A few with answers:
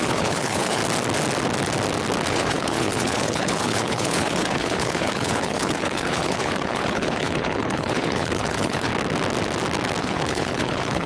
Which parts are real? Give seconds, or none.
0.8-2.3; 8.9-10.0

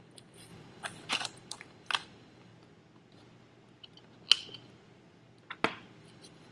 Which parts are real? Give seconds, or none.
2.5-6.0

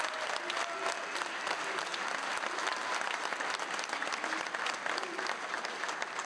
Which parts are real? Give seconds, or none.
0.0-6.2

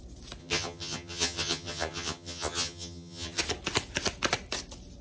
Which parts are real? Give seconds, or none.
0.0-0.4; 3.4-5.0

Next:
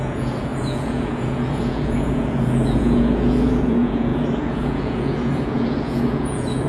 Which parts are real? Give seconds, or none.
none

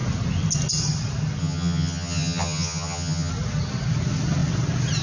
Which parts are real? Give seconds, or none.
0.0-1.4; 3.3-5.0